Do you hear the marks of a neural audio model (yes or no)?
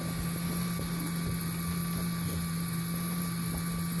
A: no